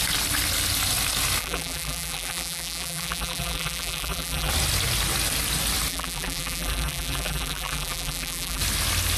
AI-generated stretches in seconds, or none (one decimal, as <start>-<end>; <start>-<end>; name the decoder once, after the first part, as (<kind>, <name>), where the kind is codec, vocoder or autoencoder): 1.4-4.5 (vocoder, BigVGAN v2); 5.9-8.6